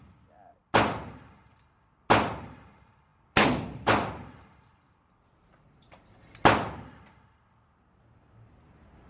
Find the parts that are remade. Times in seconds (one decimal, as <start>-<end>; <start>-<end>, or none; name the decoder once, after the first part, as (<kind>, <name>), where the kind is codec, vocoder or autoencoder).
none